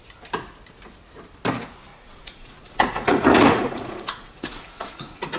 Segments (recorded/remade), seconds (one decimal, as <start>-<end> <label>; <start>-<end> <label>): 0.0-1.9 recorded; 1.9-5.4 remade